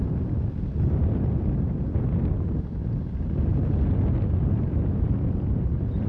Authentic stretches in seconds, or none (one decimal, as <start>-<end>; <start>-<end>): 0.0-6.1